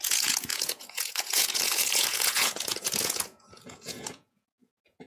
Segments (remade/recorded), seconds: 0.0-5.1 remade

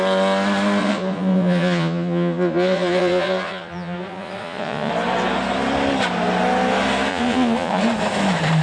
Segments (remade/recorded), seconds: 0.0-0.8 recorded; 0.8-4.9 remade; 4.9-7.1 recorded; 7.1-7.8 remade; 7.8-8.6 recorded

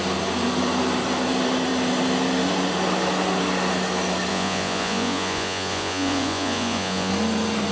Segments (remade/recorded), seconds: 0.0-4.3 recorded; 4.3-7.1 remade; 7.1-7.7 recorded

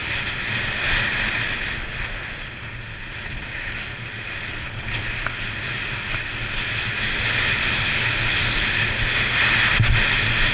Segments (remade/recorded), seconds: 0.0-10.5 recorded

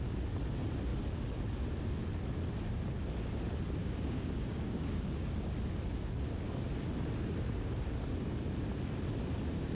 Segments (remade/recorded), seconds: 0.0-3.8 recorded; 3.8-5.4 remade; 5.4-9.7 recorded

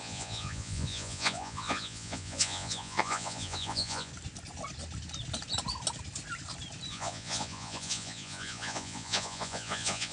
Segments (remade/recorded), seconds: 0.0-4.1 remade; 4.1-6.9 recorded; 6.9-10.1 remade

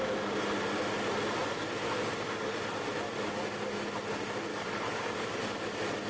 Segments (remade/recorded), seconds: 0.0-4.5 recorded; 4.5-5.4 remade; 5.4-6.1 recorded

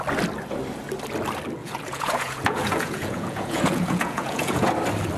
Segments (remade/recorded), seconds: 0.0-1.6 recorded; 1.6-4.7 remade; 4.7-5.2 recorded